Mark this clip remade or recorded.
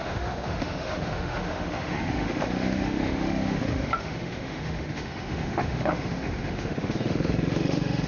remade